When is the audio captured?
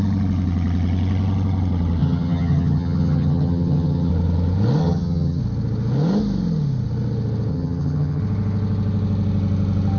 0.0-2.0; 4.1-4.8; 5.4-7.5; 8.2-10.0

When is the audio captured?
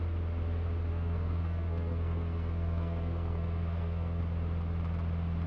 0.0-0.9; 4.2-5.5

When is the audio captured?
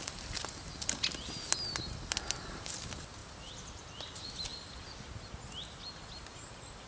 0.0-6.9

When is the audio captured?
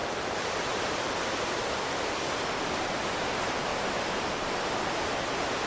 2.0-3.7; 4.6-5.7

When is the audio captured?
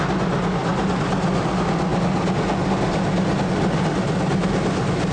0.0-5.1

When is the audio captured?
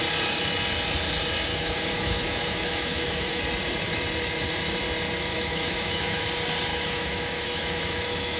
0.0-1.5; 3.4-5.3; 6.2-6.7